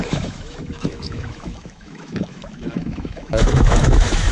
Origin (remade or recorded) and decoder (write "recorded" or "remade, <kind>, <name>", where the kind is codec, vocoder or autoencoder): remade, autoencoder, DAC-VAE